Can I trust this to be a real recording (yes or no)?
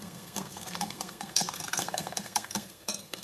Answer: no